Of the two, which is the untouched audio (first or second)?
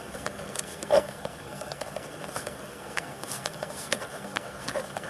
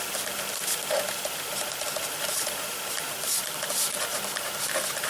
second